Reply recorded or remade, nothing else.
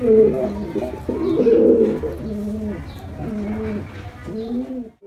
recorded